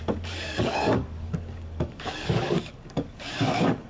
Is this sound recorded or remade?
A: remade